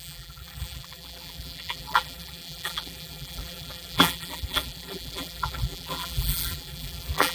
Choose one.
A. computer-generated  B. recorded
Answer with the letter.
A